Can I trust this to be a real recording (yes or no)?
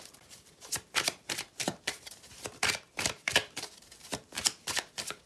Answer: no